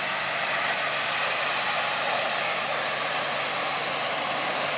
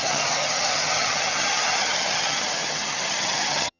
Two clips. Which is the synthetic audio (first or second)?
second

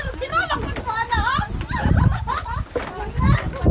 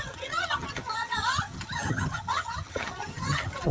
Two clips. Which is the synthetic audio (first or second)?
second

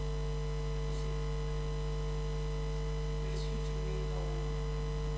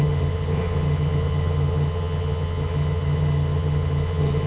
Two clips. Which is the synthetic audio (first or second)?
second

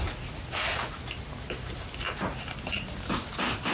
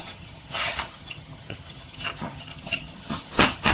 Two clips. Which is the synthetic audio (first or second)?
second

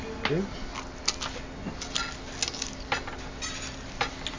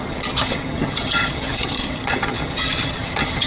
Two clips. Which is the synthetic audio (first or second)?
second